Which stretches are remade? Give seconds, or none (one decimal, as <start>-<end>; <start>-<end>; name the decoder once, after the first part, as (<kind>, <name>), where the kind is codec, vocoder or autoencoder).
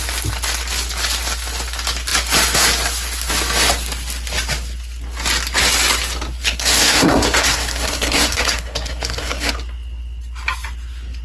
6.4-9.5 (codec, SNAC)